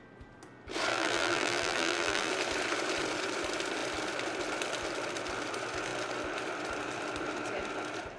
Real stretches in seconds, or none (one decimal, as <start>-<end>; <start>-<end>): 0.0-0.9; 2.3-8.2